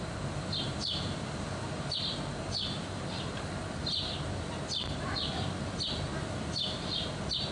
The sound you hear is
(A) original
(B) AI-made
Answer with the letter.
A